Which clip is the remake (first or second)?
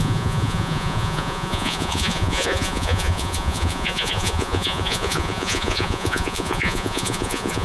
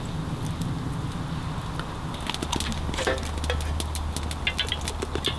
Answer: first